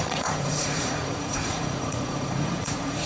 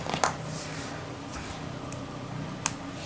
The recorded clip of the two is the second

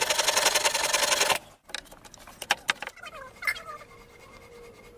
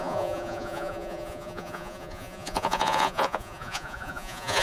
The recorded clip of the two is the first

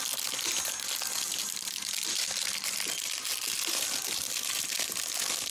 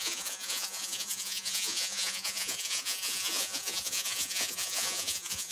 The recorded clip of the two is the first